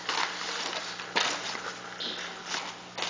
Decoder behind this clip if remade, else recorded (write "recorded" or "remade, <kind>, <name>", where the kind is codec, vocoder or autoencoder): recorded